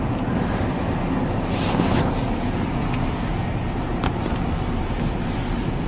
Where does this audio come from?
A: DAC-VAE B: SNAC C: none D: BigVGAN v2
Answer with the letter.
C